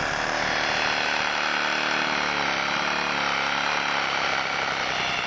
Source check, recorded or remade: recorded